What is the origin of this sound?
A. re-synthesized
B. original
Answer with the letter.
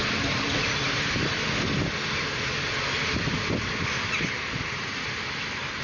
B